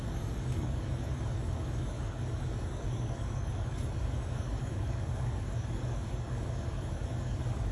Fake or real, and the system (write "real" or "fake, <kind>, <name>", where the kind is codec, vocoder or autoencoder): fake, codec, DAC